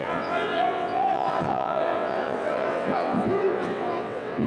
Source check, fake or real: fake